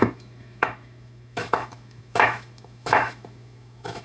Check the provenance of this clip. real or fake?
fake